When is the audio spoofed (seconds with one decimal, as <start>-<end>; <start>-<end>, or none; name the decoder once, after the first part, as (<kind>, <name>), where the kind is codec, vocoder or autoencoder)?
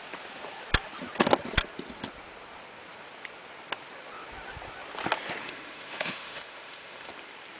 5.4-7.1 (autoencoder, DAC-VAE)